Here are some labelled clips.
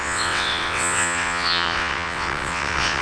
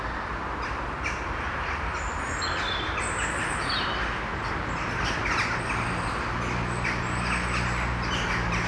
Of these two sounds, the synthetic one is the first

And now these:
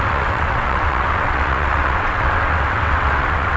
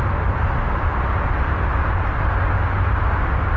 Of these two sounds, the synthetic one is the first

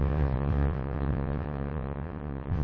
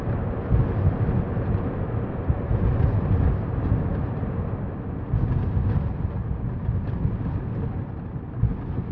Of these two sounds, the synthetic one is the first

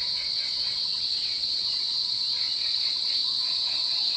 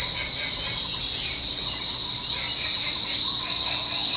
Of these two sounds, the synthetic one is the first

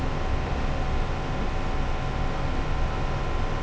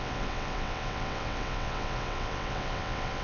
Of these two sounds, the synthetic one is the second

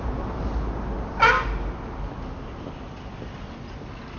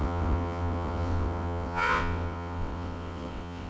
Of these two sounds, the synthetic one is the second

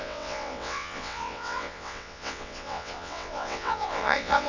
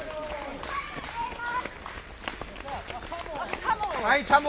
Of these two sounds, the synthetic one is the first